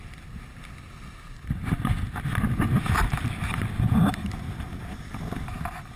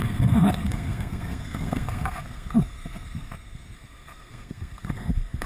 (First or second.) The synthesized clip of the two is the second